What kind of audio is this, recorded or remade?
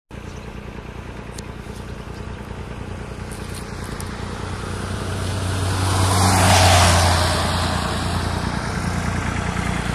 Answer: recorded